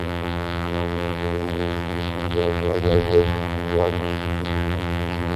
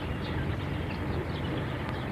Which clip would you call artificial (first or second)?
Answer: first